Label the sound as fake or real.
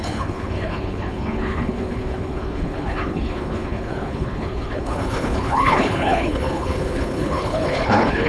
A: fake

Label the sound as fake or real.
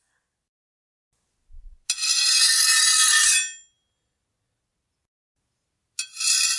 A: real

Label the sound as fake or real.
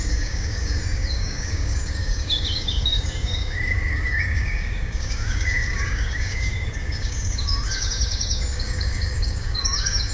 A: fake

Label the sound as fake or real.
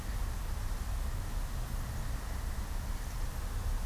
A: real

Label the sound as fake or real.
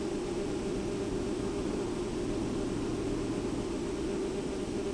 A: real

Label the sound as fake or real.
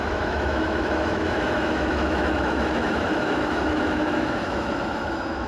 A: fake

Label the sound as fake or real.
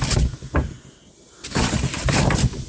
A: real